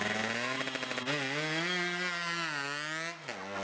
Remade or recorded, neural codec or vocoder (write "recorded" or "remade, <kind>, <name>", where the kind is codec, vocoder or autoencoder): recorded